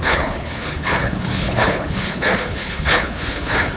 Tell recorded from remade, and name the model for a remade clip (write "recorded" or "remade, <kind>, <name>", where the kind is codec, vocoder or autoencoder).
remade, codec, HILCodec